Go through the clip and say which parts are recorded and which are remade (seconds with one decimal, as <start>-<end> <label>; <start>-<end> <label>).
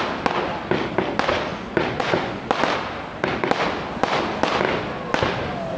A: 0.0-1.5 recorded; 1.5-2.3 remade; 2.3-5.8 recorded